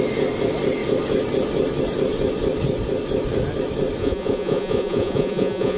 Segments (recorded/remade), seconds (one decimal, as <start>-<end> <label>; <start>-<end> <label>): 0.0-4.0 recorded; 4.0-5.8 remade